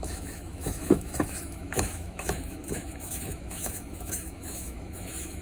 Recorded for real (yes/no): no